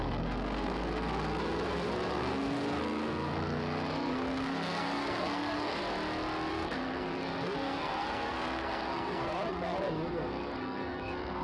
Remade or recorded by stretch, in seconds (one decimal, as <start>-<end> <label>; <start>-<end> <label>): 0.0-5.8 remade; 5.8-6.5 recorded; 6.5-11.4 remade